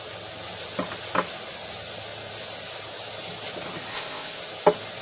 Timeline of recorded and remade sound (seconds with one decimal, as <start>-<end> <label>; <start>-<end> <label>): 0.0-3.9 recorded; 3.9-4.4 remade; 4.4-5.0 recorded